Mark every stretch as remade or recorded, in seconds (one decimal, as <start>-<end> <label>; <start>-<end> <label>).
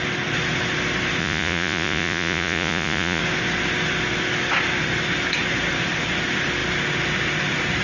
0.0-1.2 recorded; 1.2-3.2 remade; 3.2-7.8 recorded